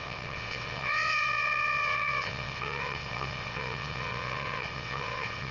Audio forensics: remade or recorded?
remade